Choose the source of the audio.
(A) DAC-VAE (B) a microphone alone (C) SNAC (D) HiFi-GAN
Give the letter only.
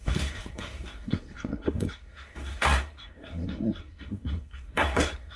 C